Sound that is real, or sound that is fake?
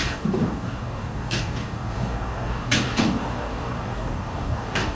fake